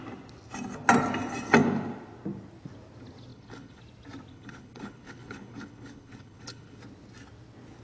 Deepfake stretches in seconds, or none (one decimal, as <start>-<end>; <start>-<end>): 3.3-3.8; 4.3-6.8